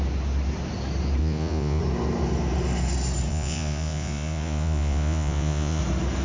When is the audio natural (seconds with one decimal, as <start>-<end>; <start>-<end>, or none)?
0.0-1.2; 1.8-3.3; 5.8-6.2